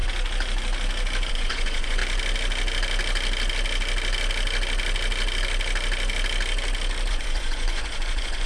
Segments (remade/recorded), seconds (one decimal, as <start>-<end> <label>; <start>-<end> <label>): 0.0-1.3 recorded; 1.3-2.0 remade; 2.0-7.1 recorded; 7.1-8.5 remade